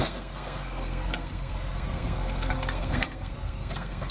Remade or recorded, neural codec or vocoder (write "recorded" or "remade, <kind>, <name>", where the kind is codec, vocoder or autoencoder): remade, codec, SNAC